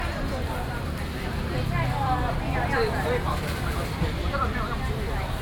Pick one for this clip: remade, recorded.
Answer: remade